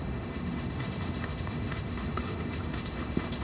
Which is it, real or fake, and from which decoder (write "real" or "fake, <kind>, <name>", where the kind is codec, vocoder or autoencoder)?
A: fake, autoencoder, DAC-VAE